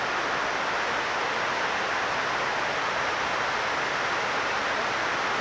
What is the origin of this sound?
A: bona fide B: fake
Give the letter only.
A